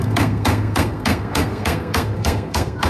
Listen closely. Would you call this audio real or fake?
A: fake